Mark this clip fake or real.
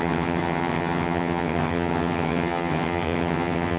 fake